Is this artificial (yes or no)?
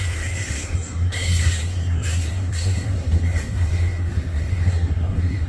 yes